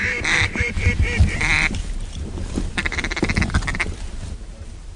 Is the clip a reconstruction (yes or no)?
yes